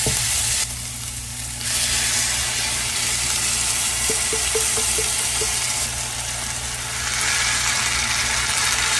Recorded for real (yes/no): yes